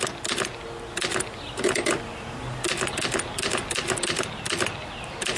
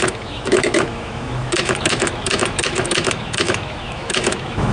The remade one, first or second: second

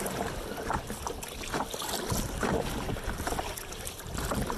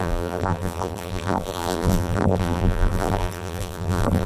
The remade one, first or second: second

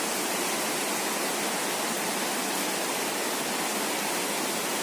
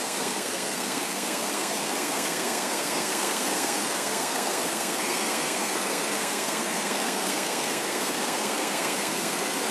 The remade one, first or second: second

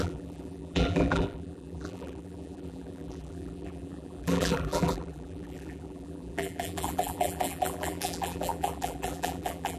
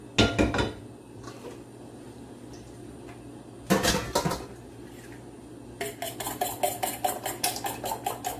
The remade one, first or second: first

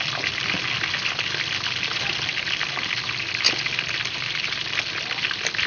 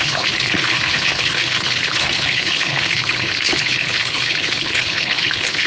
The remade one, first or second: second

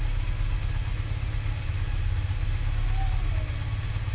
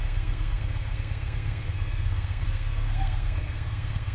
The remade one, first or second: second